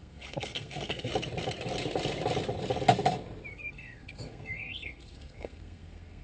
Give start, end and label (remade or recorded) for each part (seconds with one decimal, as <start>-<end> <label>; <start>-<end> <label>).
0.0-1.1 remade; 1.1-3.5 recorded; 3.5-6.2 remade